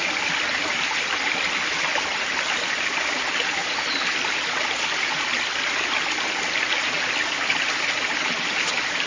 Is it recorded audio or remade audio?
recorded